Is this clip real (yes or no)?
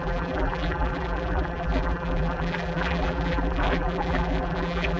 no